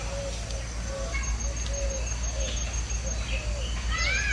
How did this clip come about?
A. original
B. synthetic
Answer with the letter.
A